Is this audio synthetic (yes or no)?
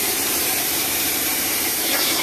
yes